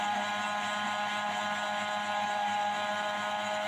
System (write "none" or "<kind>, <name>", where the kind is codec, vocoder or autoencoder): none